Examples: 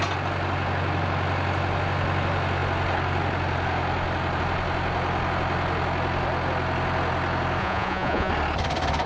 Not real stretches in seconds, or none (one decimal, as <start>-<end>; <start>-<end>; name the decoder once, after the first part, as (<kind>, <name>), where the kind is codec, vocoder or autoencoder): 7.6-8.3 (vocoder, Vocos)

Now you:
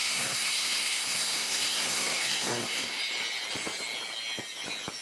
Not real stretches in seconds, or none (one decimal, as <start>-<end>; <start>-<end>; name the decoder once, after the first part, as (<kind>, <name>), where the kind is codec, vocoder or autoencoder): 0.0-3.0 (codec, SNAC)

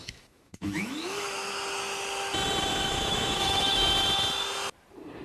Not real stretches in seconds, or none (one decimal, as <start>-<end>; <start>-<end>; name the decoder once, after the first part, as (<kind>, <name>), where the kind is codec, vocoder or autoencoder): 0.0-1.5 (autoencoder, DAC-VAE); 2.7-3.9